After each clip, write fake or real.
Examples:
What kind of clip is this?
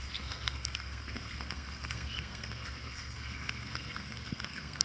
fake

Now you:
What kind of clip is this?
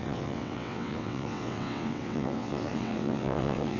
fake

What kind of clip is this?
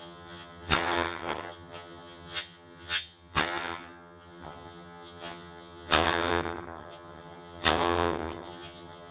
fake